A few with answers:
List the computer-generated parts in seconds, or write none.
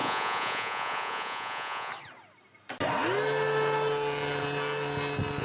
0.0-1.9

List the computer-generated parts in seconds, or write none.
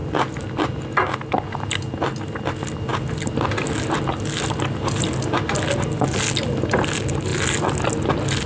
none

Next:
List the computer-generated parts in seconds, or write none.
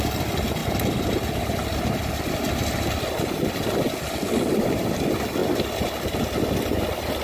none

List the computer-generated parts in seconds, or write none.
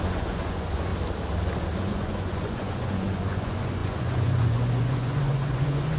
0.0-0.9; 1.8-6.0